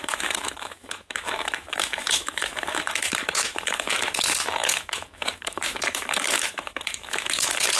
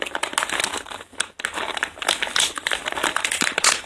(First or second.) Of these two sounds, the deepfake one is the first